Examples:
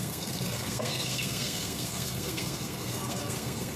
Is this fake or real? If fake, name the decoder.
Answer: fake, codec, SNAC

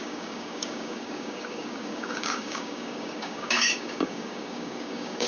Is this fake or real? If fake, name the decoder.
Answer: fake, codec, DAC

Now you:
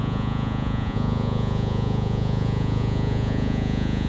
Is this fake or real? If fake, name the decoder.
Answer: fake, vocoder, Vocos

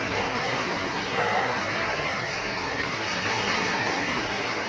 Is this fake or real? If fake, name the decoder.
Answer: fake, codec, SNAC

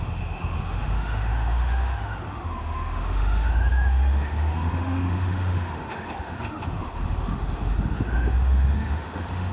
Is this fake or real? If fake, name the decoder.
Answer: fake, autoencoder, DAC-VAE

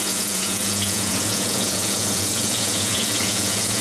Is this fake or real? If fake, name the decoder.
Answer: fake, vocoder, Vocos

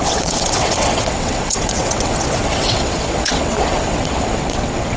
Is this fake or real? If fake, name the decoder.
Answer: fake, vocoder, WaveNeXt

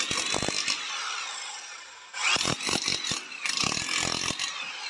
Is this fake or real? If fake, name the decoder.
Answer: real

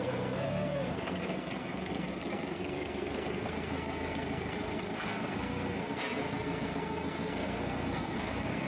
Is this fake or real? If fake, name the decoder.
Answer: fake, codec, SNAC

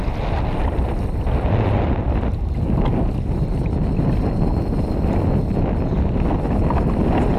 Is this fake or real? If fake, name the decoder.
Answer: real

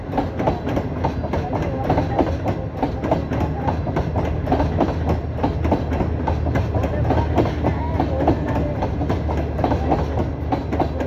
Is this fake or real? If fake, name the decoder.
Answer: real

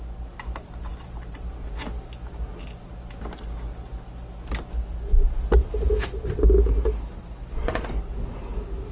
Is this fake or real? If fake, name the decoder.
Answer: real